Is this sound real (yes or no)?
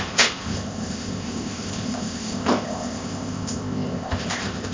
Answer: no